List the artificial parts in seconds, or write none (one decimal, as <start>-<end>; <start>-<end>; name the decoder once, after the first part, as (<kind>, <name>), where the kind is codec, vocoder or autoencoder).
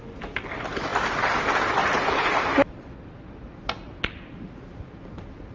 1.8-2.4 (vocoder, BigVGAN v2)